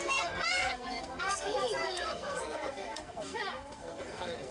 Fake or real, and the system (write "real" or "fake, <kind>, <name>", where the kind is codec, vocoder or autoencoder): fake, codec, SNAC